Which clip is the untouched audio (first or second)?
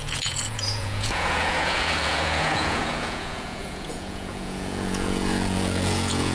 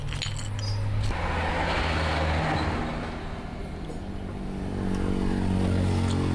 second